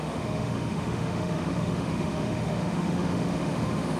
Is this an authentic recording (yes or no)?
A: no